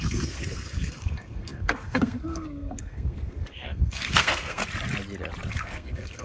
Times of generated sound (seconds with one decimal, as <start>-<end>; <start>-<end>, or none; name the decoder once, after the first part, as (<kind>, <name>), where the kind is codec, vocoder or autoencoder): 0.0-4.6 (codec, SNAC); 5.5-6.2